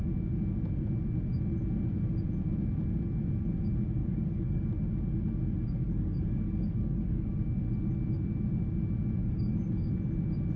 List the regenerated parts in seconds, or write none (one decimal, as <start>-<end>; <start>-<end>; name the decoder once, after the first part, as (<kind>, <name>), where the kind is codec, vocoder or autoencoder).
4.0-4.6 (codec, DAC); 5.8-7.4; 9.2-9.9